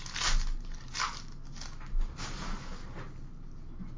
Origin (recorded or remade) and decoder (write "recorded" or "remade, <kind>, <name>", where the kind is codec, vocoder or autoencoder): recorded